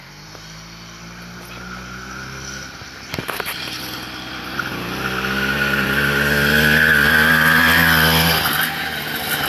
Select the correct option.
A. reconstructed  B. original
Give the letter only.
B